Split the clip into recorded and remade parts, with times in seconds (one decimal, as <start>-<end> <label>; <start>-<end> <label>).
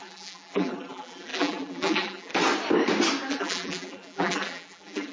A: 0.0-2.3 remade; 2.3-3.3 recorded; 3.3-5.1 remade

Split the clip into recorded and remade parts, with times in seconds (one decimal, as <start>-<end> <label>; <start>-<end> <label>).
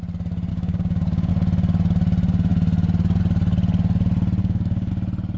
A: 0.0-0.5 recorded; 0.5-1.3 remade; 1.3-4.4 recorded; 4.4-4.9 remade; 4.9-5.4 recorded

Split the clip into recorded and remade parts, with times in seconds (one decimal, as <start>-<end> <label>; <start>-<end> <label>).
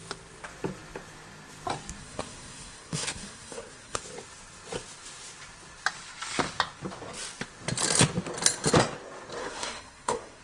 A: 0.0-2.0 recorded; 2.0-4.0 remade; 4.0-9.4 recorded; 9.4-10.4 remade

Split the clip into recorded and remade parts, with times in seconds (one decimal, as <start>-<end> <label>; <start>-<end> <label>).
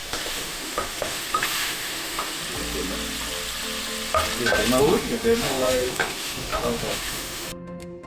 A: 0.0-2.4 remade; 2.4-4.8 recorded; 4.8-8.1 remade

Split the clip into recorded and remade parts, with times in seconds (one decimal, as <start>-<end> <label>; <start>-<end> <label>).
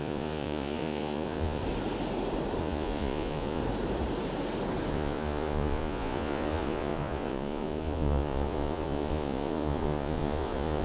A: 0.0-1.6 remade; 1.6-2.6 recorded; 2.6-3.6 remade; 3.6-4.9 recorded; 4.9-10.8 remade